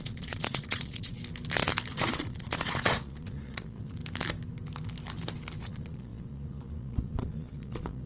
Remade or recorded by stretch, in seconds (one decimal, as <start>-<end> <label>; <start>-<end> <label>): 0.0-1.2 remade; 1.2-1.9 recorded; 1.9-4.0 remade; 4.0-5.6 recorded; 5.6-8.1 remade